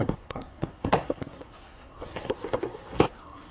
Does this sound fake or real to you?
fake